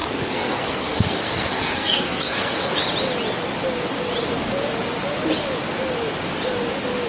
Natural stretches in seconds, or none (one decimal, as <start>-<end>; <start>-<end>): 2.8-7.1